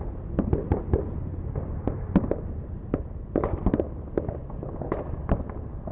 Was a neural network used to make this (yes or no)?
no